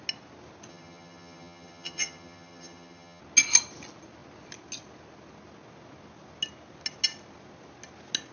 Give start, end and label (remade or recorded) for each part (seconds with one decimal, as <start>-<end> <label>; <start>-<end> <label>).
0.0-0.7 recorded; 0.7-3.2 remade; 3.2-8.3 recorded